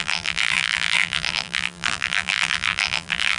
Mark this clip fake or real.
fake